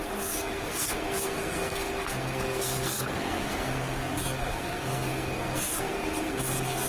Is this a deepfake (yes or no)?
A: yes